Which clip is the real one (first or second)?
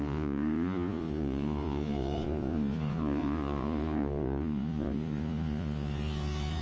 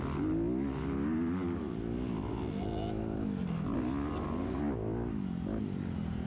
second